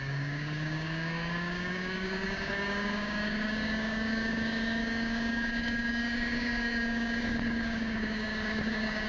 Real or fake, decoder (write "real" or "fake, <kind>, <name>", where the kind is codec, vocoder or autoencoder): fake, codec, DAC